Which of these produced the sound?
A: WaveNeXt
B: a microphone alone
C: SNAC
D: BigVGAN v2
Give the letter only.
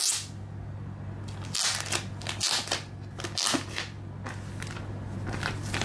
B